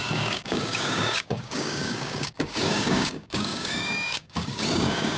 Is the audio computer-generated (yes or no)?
yes